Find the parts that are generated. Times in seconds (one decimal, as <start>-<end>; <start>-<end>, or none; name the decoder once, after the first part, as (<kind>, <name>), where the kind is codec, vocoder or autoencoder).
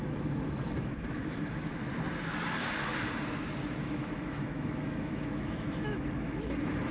0.0-1.7 (autoencoder, DAC-VAE); 3.8-6.9